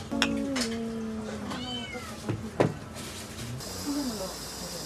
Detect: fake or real real